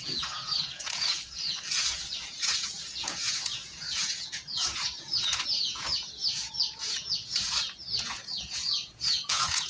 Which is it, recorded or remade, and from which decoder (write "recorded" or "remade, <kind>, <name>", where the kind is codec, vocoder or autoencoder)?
remade, vocoder, Vocos